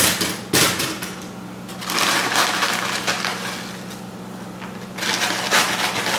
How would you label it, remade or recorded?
recorded